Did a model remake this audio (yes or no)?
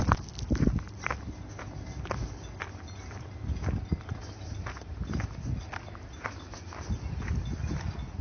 no